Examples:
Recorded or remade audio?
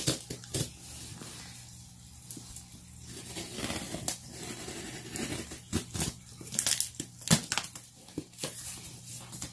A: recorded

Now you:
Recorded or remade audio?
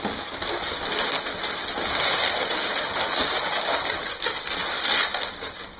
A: recorded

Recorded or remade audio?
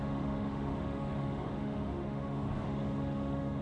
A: remade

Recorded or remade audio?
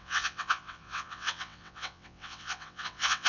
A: remade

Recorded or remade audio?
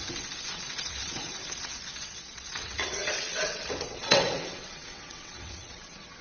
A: remade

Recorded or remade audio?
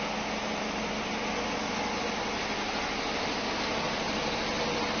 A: recorded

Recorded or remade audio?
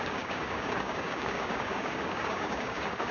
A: remade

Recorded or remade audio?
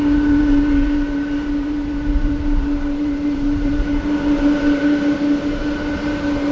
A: remade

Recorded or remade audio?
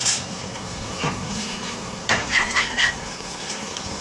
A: remade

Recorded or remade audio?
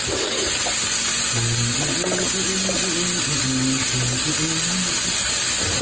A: recorded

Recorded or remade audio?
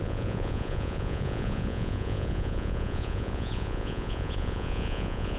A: remade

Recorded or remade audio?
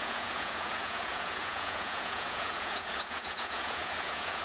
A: remade